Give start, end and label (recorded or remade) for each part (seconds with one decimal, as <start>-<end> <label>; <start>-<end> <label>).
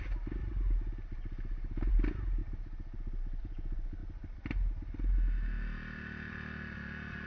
0.0-7.3 recorded